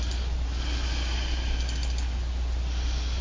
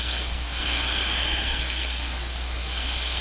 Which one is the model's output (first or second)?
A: second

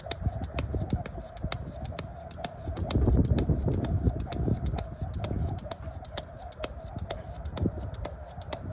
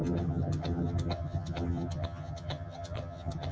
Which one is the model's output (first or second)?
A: second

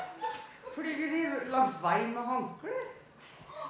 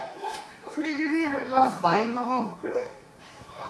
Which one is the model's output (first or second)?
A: second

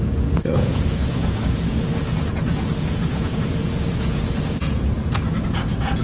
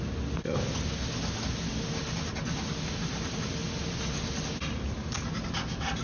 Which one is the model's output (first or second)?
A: first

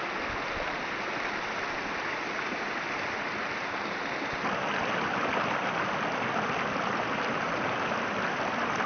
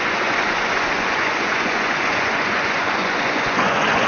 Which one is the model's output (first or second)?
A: second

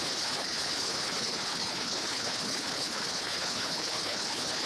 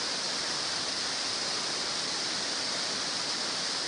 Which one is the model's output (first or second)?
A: first